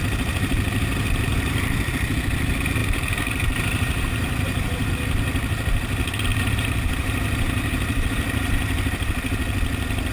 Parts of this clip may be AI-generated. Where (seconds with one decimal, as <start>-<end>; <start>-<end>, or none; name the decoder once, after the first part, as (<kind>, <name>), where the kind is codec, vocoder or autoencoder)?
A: 1.3-1.9 (vocoder, BigVGAN v2); 2.8-4.9; 6.3-8.1